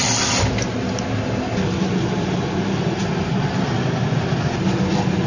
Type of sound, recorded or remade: recorded